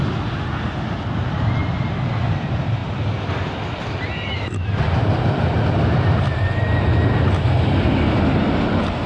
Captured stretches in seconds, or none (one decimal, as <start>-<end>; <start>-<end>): 0.0-9.1